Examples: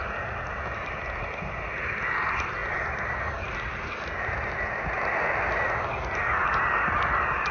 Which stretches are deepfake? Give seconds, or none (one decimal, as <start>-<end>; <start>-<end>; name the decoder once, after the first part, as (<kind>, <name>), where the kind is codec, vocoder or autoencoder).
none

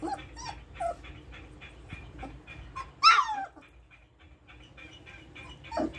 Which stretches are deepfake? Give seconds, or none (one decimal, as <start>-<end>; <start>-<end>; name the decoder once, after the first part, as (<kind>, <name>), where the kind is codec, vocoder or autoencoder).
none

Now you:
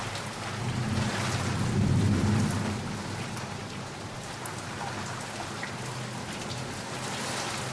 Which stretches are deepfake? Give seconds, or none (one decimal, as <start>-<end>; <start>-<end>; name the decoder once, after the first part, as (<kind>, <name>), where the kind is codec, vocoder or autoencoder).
none

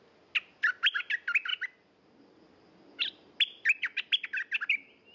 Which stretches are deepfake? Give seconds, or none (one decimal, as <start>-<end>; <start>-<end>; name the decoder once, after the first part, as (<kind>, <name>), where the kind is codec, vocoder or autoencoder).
none

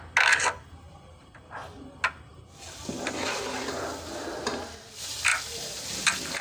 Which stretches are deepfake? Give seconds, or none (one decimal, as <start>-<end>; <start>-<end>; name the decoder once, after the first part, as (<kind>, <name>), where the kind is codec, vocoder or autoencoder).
2.3-4.7 (vocoder, BigVGAN v2)

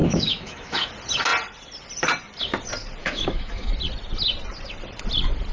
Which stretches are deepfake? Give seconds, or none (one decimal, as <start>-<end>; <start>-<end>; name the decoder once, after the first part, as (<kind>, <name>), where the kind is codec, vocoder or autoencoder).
0.0-0.9 (autoencoder, DAC-VAE); 3.0-3.7